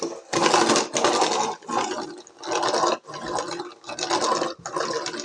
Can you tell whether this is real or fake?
real